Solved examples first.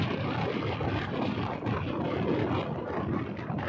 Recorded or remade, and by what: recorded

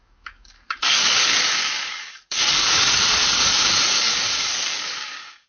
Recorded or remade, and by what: remade, codec, DAC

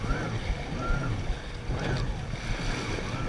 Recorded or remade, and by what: recorded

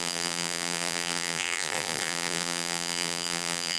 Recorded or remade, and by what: remade, vocoder, BigVGAN v2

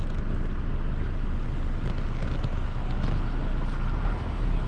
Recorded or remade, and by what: recorded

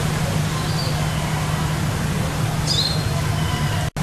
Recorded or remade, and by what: recorded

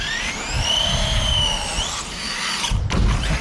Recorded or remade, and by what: recorded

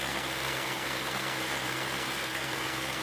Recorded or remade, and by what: remade, codec, SNAC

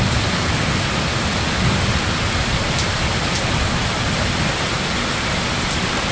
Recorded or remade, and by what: recorded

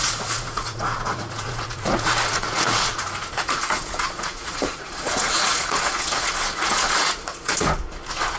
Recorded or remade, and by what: remade, vocoder, Vocos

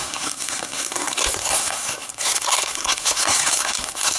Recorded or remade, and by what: remade, codec, SNAC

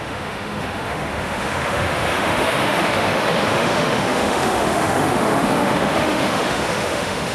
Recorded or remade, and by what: remade, autoencoder, DAC-VAE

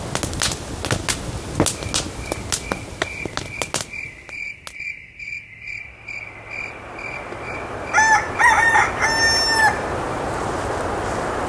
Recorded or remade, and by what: recorded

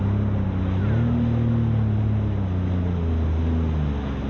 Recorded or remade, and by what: recorded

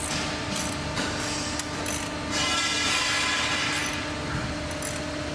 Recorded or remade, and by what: recorded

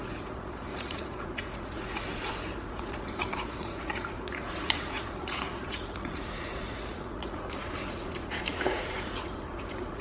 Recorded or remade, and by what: remade, vocoder, Vocos